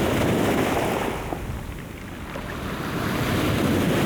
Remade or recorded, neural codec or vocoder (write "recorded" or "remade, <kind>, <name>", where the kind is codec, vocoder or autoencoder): recorded